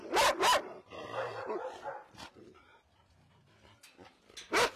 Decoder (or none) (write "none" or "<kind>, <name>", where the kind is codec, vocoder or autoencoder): none